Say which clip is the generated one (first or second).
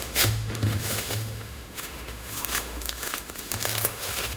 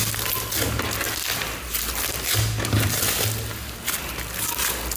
first